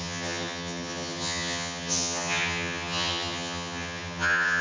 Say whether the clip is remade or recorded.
remade